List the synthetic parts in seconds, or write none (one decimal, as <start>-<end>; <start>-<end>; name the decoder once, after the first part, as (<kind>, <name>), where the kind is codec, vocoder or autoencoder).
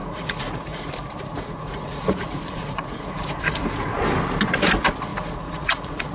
0.0-0.9 (vocoder, Vocos); 1.3-4.0; 5.1-6.1